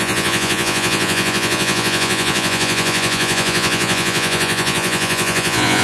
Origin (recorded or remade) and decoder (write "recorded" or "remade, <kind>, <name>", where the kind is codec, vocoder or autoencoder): remade, vocoder, Vocos